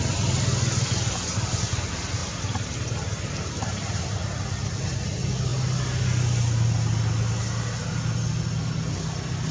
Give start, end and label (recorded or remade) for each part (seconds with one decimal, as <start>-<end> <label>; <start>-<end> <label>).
0.0-2.2 recorded; 2.2-4.1 remade; 4.1-9.5 recorded